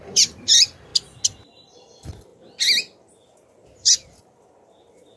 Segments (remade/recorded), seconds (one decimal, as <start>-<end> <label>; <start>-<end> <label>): 0.0-0.9 remade; 0.9-1.5 recorded; 1.5-2.3 remade; 2.3-5.2 recorded